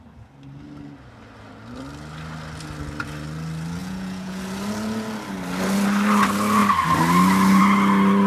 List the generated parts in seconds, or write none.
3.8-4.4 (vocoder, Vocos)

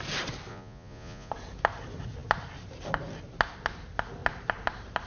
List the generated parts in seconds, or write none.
0.5-1.3 (vocoder, Vocos)

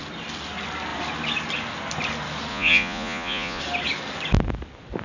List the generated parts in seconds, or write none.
2.5-3.6 (vocoder, Vocos)

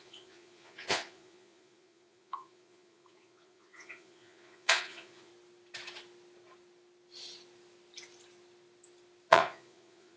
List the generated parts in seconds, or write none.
0.0-5.3 (vocoder, Vocos); 9.3-10.2

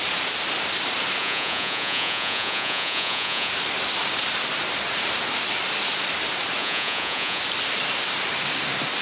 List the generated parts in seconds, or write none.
1.2-3.5 (vocoder, Vocos); 6.6-7.4

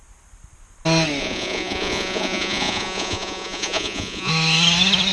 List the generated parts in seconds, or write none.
1.2-4.3 (vocoder, Vocos)